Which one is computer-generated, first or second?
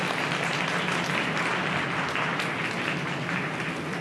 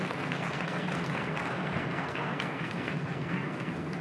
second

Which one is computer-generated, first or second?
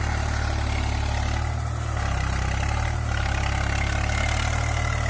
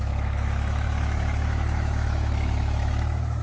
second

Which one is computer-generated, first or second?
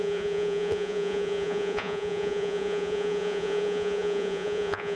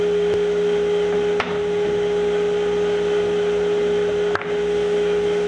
first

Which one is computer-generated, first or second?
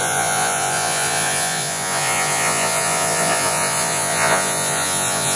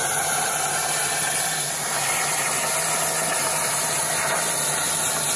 first